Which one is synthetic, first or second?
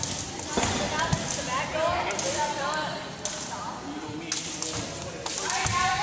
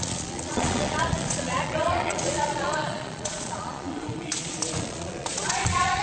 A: second